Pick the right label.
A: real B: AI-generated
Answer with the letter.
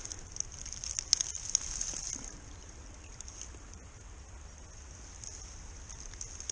A